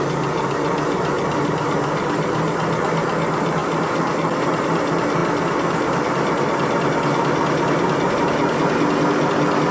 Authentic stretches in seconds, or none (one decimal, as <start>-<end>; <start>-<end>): 0.0-9.7